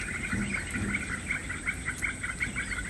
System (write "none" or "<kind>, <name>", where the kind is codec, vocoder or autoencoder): none